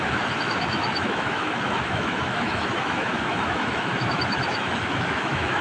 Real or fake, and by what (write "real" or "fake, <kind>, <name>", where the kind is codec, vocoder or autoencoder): fake, autoencoder, DAC-VAE